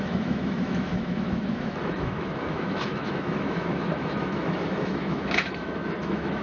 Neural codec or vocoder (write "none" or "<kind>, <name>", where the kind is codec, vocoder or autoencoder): autoencoder, DAC-VAE